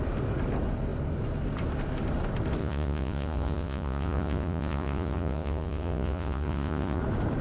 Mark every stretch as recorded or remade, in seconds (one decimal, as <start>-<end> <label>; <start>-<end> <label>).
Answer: 0.0-2.6 recorded; 2.6-7.0 remade; 7.0-7.4 recorded